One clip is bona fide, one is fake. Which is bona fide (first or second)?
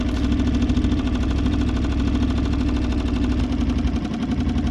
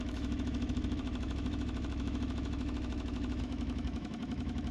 first